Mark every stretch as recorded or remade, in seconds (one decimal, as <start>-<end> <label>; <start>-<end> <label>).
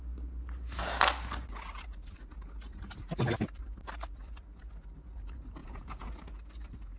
0.0-5.6 recorded; 5.6-6.1 remade; 6.1-7.0 recorded